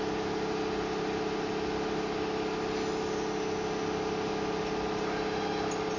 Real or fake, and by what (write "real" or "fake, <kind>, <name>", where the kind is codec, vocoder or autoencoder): real